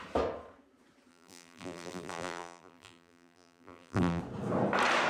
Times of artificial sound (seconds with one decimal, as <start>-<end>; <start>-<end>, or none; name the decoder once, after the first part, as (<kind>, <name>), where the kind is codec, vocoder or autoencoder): 1.1-4.2 (vocoder, BigVGAN v2)